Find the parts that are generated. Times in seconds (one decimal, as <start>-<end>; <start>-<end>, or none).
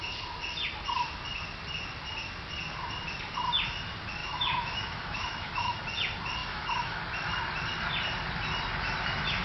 4.2-5.8; 6.4-7.0